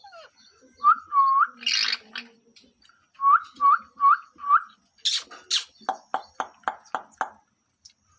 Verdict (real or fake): real